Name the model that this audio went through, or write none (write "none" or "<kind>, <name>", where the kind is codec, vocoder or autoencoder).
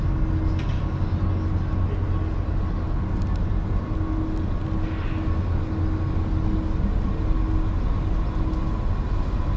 none